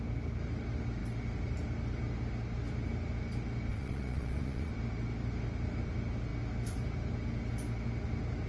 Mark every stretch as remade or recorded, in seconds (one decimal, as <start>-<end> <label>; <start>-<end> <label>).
0.0-3.7 recorded; 3.7-4.7 remade; 4.7-8.5 recorded